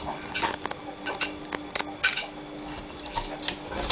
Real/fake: real